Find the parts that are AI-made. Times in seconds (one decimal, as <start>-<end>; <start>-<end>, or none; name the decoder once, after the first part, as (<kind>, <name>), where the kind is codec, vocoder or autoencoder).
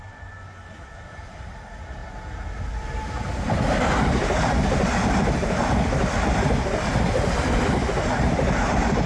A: none